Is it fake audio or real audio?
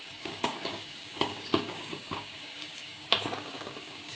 fake